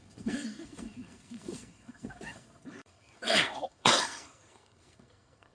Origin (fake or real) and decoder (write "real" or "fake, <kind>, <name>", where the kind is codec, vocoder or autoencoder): fake, codec, SNAC